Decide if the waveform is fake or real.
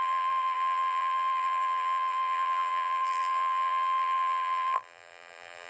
fake